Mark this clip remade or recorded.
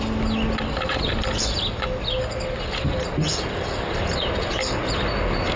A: recorded